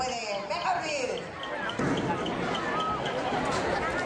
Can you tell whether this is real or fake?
real